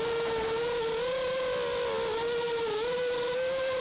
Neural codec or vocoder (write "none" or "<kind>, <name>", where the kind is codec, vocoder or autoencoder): none